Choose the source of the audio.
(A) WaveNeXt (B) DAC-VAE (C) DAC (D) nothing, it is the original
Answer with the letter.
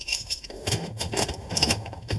B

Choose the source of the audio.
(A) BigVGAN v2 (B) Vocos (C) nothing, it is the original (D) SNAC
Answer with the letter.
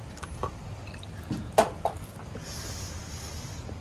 C